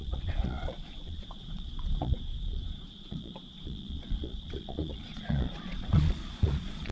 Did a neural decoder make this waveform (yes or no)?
yes